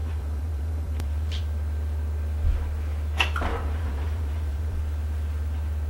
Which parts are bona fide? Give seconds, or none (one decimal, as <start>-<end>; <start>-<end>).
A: 1.4-3.5; 4.8-5.9